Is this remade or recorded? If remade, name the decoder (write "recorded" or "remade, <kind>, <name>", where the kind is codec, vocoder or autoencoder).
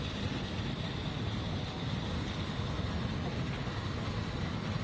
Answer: recorded